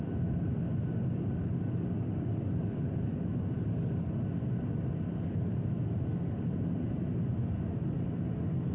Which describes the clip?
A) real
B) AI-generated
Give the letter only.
A